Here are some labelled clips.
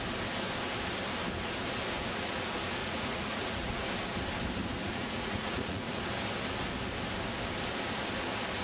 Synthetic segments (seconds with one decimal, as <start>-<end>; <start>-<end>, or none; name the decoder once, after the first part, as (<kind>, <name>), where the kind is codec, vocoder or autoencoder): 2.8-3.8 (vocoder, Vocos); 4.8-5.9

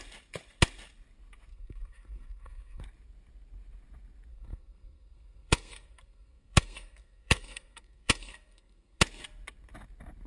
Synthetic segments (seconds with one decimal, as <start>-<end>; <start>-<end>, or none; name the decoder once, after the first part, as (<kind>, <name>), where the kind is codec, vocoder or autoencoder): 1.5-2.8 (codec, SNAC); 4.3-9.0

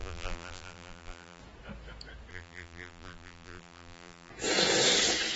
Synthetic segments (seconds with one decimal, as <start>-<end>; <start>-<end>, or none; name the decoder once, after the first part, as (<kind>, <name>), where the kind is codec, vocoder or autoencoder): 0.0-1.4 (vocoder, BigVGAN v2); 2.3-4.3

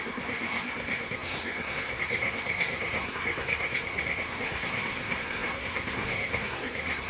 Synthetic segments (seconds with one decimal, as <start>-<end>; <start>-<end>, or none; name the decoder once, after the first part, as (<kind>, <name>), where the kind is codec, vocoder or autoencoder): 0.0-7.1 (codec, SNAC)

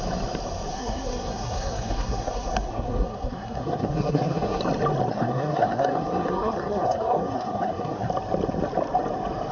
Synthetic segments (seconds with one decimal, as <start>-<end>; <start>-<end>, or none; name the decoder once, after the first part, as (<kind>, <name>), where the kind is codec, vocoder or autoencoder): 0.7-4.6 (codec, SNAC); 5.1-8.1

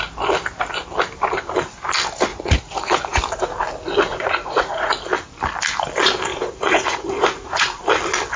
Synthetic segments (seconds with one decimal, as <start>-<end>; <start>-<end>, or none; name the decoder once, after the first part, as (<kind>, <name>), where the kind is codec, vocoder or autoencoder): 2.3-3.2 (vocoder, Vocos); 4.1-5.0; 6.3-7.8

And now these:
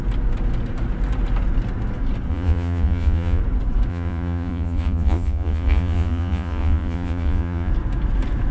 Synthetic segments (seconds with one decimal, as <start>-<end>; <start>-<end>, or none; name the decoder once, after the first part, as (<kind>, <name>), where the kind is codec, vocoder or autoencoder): 2.3-3.4 (vocoder, Vocos); 3.9-7.7

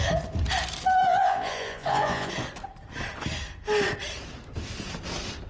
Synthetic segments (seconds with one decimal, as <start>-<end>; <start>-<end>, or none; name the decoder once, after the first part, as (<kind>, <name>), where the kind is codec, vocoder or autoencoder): 1.0-2.3 (vocoder, Vocos)